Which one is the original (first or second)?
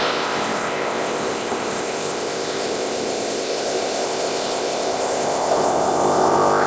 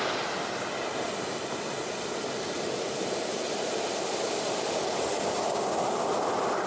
second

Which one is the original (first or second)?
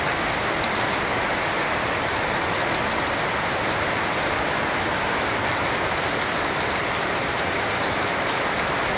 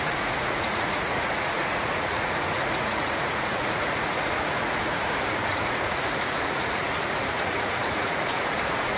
first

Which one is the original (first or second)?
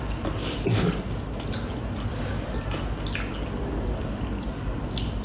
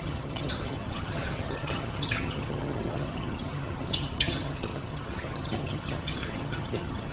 first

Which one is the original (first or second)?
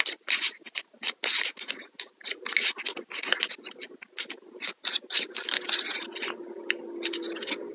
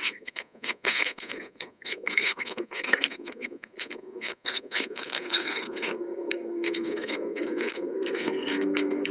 first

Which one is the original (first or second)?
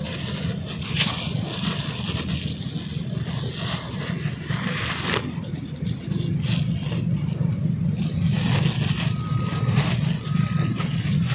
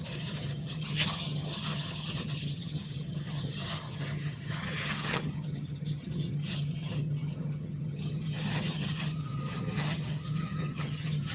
first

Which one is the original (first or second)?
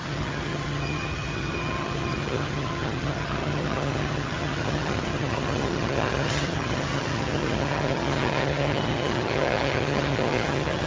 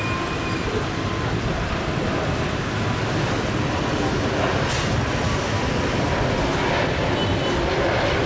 second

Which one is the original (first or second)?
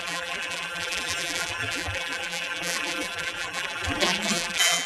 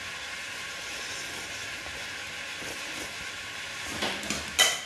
second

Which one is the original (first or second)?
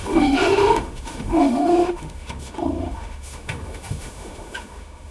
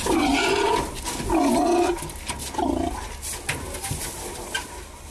second